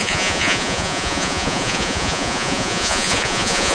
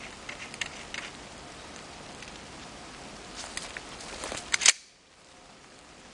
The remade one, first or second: first